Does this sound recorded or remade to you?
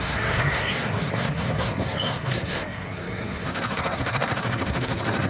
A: remade